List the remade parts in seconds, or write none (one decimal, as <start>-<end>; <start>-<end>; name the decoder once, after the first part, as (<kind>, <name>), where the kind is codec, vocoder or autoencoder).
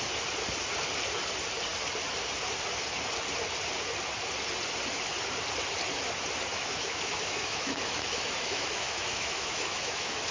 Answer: 6.5-10.3 (autoencoder, DAC-VAE)